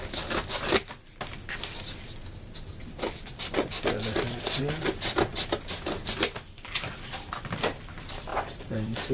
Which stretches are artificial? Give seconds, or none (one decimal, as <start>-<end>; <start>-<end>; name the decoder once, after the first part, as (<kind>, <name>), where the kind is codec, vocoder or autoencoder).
2.7-4.6 (vocoder, BigVGAN v2); 5.3-6.2; 8.3-9.1